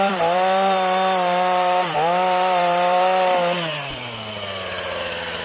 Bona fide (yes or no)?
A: no